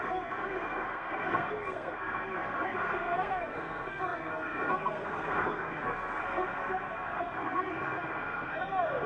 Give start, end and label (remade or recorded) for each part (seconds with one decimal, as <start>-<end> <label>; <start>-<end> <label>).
0.0-9.1 remade